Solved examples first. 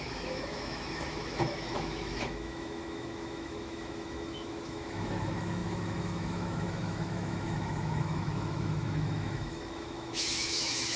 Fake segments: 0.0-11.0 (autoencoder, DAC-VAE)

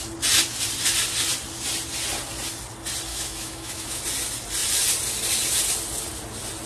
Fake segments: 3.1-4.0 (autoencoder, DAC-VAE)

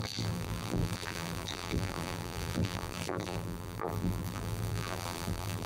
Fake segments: 0.0-5.7 (vocoder, BigVGAN v2)

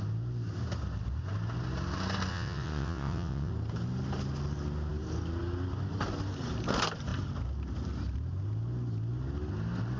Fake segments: 2.3-3.5 (vocoder, WaveNeXt)

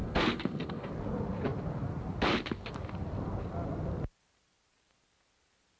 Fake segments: 0.0-0.9 (codec, SNAC)